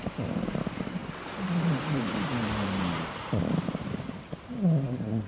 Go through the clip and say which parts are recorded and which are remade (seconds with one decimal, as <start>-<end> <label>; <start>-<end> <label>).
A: 0.0-1.0 remade; 1.0-1.8 recorded; 1.8-5.3 remade